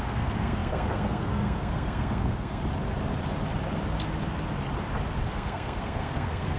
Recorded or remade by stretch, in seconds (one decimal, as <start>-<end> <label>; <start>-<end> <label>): 0.0-2.6 remade; 2.6-5.3 recorded; 5.3-6.6 remade